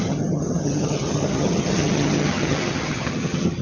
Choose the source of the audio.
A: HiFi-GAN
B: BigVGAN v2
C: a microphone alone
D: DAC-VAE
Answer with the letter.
A